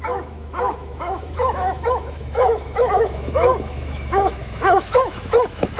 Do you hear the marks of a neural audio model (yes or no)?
yes